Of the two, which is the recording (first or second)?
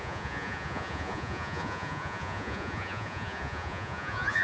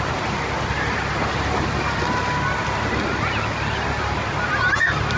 second